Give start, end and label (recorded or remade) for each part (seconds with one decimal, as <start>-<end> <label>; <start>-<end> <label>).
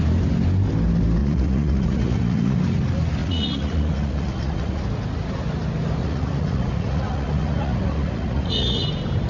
0.0-1.2 recorded; 1.2-2.6 remade; 2.6-3.2 recorded; 3.2-4.8 remade; 4.8-6.0 recorded; 6.0-8.9 remade; 8.9-9.3 recorded